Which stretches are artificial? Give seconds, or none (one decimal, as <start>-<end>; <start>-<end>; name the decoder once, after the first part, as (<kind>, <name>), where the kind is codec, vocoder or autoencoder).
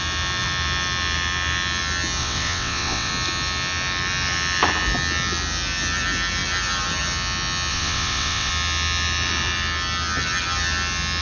2.2-3.1 (vocoder, WaveNeXt); 7.7-8.5